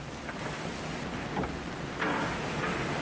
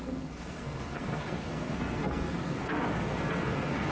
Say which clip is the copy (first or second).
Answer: second